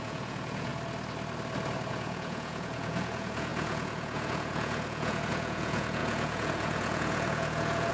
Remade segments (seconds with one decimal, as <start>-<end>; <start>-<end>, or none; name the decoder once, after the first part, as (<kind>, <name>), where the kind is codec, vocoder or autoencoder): 0.0-0.7 (vocoder, Vocos); 1.9-7.9

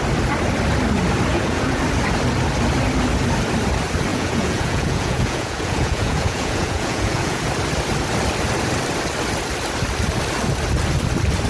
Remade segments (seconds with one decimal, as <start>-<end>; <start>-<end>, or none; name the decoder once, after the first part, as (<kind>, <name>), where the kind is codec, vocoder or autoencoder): 1.3-1.8 (vocoder, Vocos); 4.1-7.5

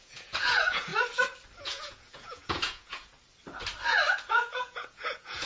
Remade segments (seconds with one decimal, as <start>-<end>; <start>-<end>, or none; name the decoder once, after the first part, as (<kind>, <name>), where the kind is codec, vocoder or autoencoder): 0.0-0.9 (vocoder, Vocos); 1.6-3.1; 4.5-5.5

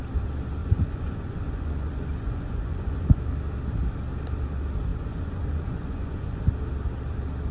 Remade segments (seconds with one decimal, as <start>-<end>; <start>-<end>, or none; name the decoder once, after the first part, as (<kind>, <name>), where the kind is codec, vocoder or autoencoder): 0.6-3.2 (vocoder, Vocos); 4.9-6.5